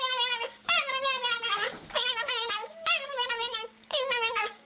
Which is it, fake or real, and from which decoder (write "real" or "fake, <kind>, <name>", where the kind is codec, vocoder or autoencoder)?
fake, codec, DAC